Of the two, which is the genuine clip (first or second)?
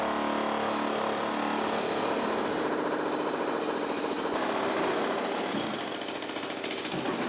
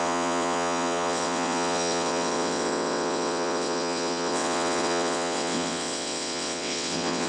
first